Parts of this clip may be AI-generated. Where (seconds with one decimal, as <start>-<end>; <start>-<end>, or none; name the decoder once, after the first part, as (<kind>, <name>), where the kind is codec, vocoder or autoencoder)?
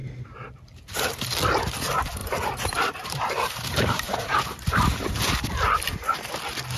2.2-6.3 (vocoder, BigVGAN v2)